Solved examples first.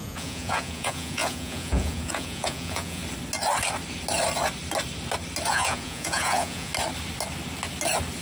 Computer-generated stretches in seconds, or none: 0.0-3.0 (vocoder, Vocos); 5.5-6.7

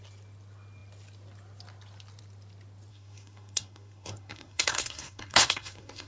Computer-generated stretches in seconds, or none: 2.9-6.1 (codec, SNAC)

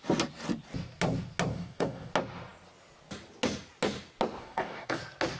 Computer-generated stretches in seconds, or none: 1.5-2.1 (codec, DAC); 4.4-5.0